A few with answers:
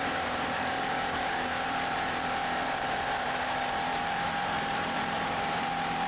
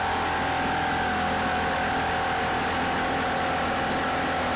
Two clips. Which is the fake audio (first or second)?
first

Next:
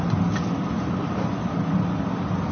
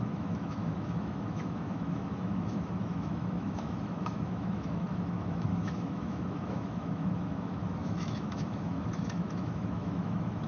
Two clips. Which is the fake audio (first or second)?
second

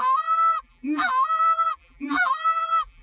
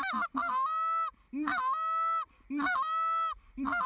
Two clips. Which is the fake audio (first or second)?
first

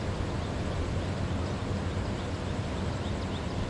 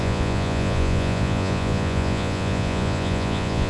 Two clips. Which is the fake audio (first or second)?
second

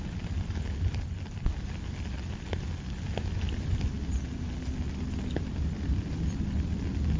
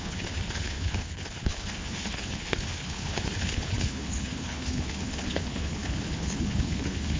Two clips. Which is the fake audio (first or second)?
second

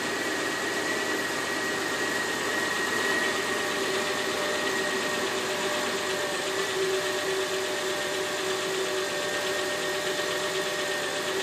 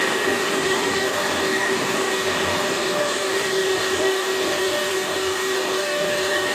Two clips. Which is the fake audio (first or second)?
second